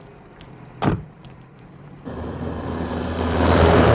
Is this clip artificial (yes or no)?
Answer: yes